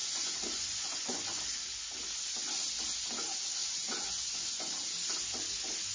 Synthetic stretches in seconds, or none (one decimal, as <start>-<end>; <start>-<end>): 0.0-1.4; 3.6-4.7